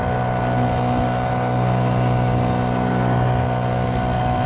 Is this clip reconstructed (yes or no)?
no